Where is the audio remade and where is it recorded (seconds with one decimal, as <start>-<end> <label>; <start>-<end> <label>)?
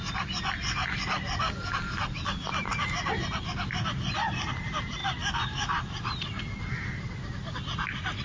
0.0-8.2 recorded